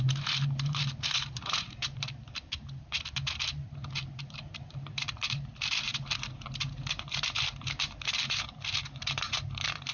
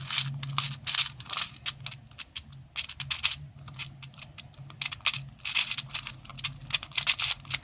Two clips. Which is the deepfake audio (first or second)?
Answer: first